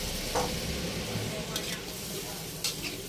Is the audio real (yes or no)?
yes